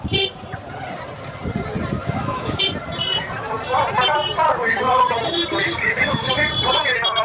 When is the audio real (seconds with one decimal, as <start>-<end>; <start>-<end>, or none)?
0.0-2.0; 2.6-5.6; 6.3-7.2